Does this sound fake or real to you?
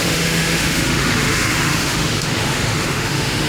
fake